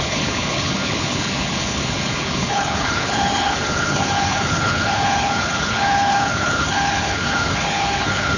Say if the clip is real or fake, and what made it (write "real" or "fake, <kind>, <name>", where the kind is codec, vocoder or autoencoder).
fake, codec, HILCodec